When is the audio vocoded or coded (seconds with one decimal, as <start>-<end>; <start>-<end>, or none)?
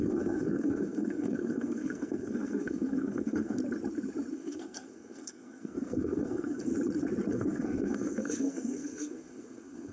0.0-3.6; 4.3-6.7; 7.3-9.9